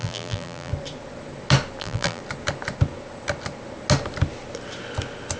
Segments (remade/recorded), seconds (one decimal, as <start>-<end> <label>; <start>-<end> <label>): 0.0-0.7 remade; 0.7-1.8 recorded; 1.8-2.2 remade; 2.2-5.4 recorded